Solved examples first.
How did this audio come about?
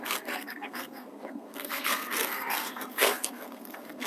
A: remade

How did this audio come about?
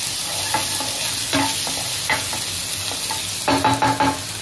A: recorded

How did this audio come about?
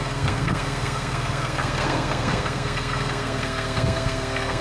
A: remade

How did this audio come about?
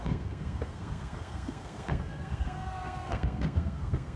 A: remade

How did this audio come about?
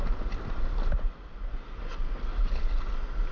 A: recorded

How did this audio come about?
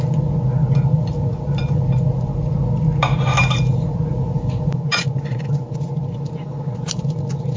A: recorded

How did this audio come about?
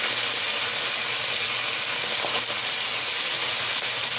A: recorded